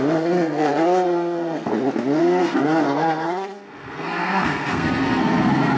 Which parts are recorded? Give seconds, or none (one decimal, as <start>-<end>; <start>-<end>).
1.7-2.2